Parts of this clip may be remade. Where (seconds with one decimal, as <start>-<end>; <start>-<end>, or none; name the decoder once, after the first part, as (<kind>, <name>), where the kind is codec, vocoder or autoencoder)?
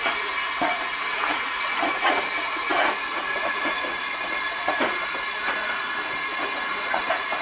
0.0-7.4 (vocoder, Vocos)